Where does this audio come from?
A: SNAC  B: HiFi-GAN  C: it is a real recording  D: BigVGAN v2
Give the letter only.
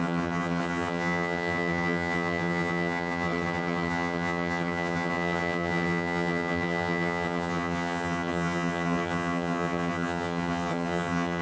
B